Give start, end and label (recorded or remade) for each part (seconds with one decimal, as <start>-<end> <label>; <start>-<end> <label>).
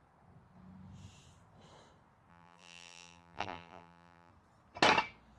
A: 0.0-2.3 recorded; 2.3-4.3 remade; 4.3-5.4 recorded